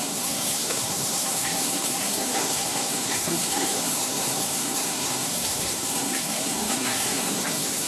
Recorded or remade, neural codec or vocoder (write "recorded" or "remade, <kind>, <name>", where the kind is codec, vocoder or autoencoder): remade, codec, SNAC